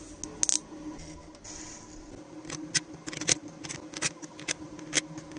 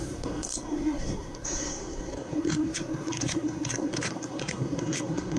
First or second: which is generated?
second